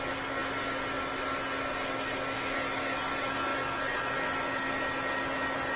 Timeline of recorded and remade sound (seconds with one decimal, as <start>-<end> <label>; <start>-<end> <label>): 0.0-5.8 recorded